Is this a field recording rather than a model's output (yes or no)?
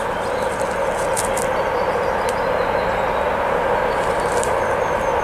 yes